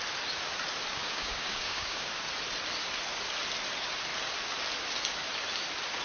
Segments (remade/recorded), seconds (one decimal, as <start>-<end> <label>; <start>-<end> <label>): 0.0-0.9 recorded; 0.9-2.2 remade; 2.2-6.0 recorded